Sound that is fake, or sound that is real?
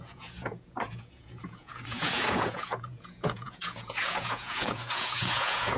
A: fake